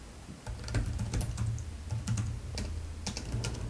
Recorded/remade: recorded